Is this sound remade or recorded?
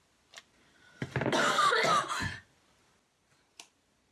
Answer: recorded